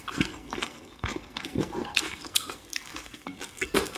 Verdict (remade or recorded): remade